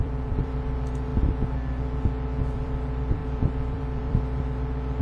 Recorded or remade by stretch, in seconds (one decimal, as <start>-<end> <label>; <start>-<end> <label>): 0.0-1.1 remade; 1.1-2.4 recorded; 2.4-5.0 remade

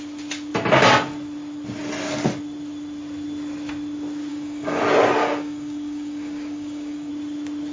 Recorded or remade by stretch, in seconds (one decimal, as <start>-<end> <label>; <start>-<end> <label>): 0.0-4.3 recorded; 4.3-4.8 remade; 4.8-5.2 recorded; 5.2-7.1 remade; 7.1-7.7 recorded

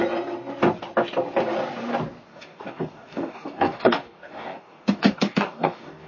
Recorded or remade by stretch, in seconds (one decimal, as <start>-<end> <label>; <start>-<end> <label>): 0.0-2.3 recorded; 2.3-6.1 remade